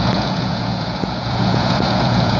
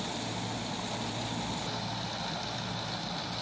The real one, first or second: second